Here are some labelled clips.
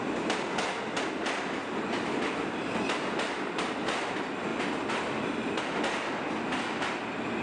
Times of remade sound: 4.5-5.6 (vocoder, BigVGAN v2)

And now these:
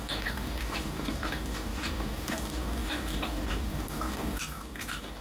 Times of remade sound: 0.0-5.2 (codec, DAC)

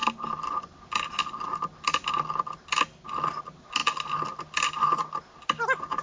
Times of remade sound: none

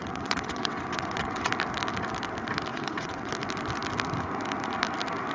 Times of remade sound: 0.0-1.5 (vocoder, WaveNeXt); 2.7-3.3

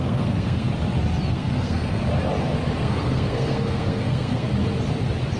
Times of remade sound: 0.0-0.7 (codec, SNAC); 1.3-2.0; 2.8-4.5